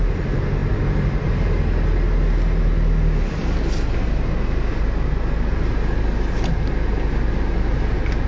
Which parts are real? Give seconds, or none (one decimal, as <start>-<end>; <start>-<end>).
0.0-8.3